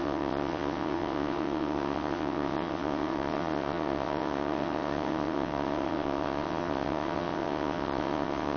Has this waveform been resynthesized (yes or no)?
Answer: yes